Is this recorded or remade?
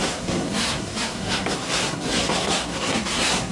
remade